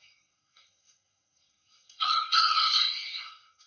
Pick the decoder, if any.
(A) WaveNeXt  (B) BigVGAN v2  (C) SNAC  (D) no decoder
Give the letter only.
C